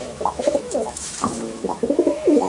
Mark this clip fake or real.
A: fake